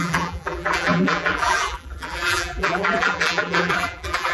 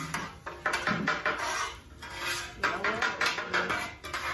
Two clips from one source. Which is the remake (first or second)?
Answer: first